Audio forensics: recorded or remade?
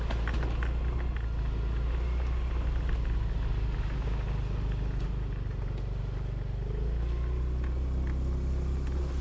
recorded